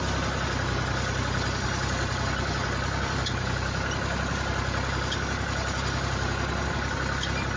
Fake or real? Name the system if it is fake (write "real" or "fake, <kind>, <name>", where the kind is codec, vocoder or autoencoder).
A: real